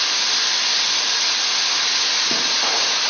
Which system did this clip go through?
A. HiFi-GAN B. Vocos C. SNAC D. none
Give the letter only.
D